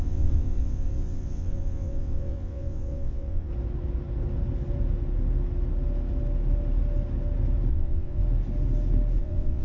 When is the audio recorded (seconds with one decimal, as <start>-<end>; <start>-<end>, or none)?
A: 3.5-7.7; 8.2-9.2